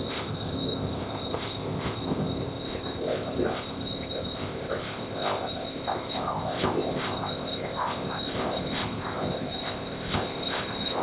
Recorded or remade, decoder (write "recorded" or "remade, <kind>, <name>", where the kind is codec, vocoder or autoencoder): remade, codec, ZipCodec